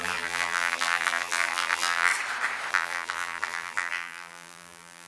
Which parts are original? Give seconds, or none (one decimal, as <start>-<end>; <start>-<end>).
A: 2.1-2.7